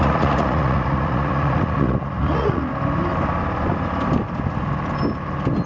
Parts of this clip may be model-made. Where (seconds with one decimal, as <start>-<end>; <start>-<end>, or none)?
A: 0.0-2.7

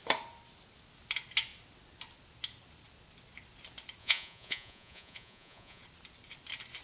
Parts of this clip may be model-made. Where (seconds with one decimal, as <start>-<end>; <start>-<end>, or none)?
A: 4.0-5.8

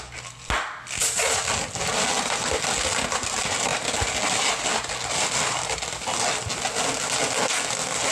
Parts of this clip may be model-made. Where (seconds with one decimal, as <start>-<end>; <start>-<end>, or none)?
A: none

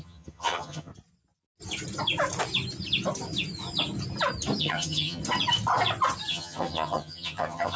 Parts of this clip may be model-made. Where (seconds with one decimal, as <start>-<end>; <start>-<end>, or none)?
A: 0.0-0.9; 4.6-5.2; 6.3-7.8

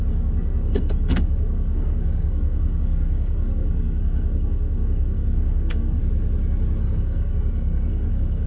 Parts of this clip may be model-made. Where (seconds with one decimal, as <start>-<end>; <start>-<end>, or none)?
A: 0.0-6.0; 6.8-8.5

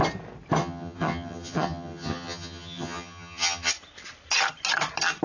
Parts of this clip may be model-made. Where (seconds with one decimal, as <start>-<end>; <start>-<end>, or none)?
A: 0.6-3.7

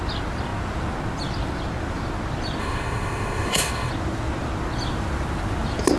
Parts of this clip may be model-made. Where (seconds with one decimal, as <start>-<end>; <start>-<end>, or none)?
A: 2.6-3.9

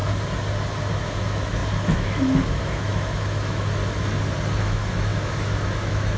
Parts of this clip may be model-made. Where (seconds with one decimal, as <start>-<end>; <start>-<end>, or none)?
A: 1.0-3.8; 4.6-6.2